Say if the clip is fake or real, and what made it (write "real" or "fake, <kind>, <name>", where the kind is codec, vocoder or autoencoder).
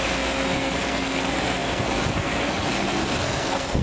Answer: fake, codec, SNAC